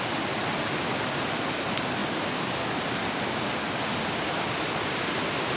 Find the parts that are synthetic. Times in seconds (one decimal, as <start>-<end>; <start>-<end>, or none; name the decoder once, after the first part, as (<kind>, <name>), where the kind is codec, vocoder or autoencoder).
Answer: none